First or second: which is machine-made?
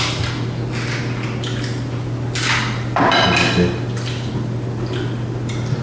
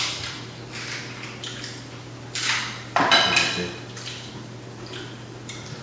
second